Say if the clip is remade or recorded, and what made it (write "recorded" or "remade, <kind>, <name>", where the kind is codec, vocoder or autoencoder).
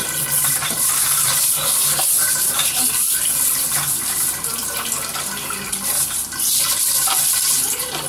recorded